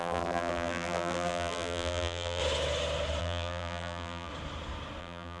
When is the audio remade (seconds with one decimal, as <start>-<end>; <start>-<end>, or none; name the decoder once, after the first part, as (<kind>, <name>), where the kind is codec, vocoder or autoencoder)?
0.0-2.4 (vocoder, BigVGAN v2); 3.2-4.3; 5.0-5.4